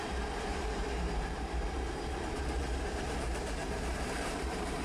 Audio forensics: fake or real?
fake